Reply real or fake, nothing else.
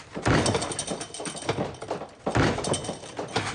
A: real